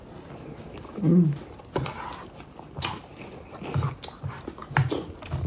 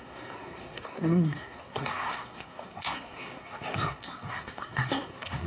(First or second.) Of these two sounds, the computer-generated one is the second